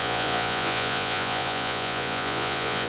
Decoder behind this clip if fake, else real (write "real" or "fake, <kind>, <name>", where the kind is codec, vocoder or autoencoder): fake, vocoder, Vocos